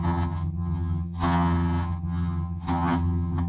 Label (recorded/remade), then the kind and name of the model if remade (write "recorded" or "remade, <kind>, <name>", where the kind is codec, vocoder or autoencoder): remade, vocoder, HiFi-GAN